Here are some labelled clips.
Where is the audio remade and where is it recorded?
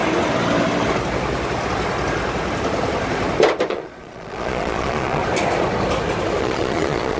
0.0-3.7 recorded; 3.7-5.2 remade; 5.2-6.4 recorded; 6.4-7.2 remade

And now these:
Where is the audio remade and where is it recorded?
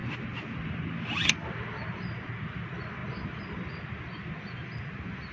0.0-5.3 recorded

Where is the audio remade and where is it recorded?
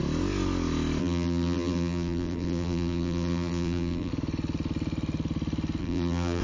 0.0-1.0 recorded; 1.0-4.1 remade; 4.1-5.8 recorded; 5.8-6.4 remade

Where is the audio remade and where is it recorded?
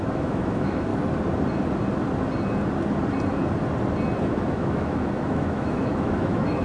0.0-0.9 remade; 0.9-4.2 recorded; 4.2-6.6 remade